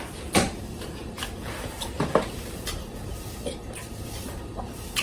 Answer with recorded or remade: remade